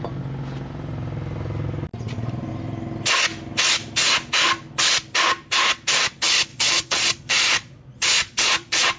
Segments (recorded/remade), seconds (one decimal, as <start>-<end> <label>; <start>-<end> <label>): 0.0-6.5 recorded; 6.5-9.0 remade